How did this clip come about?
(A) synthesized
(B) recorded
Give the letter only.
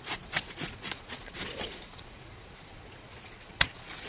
A